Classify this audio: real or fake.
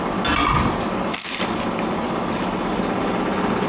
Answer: real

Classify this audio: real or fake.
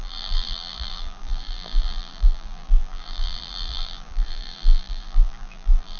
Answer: fake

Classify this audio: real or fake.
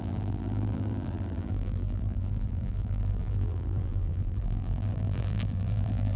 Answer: fake